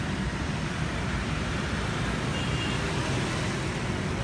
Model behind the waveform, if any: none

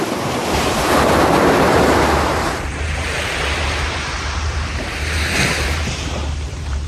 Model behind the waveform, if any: vocoder, BigVGAN v2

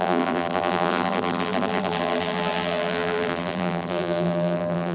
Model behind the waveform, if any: vocoder, BigVGAN v2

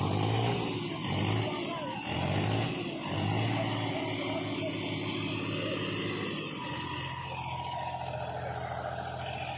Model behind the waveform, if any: none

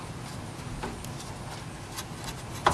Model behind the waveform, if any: none